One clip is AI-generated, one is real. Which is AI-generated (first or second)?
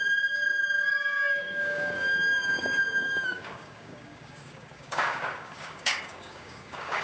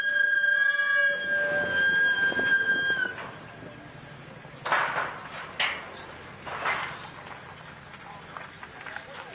first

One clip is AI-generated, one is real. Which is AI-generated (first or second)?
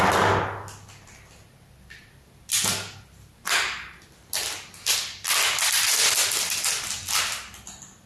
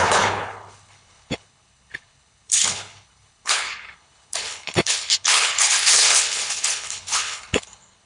second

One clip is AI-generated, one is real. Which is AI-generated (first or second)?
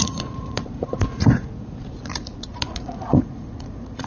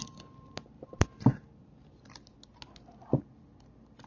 first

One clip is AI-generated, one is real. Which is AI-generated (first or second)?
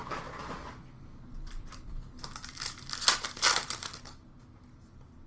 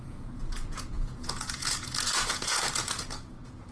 second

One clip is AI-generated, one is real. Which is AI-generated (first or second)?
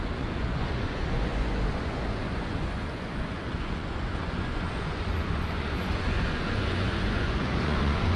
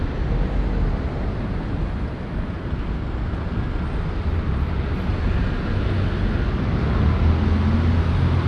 first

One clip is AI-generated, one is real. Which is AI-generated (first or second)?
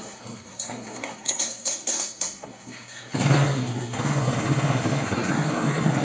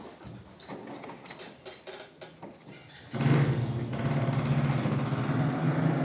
first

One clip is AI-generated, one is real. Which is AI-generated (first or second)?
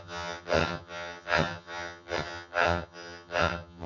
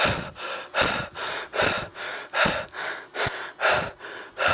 first